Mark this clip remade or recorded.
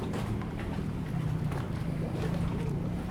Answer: remade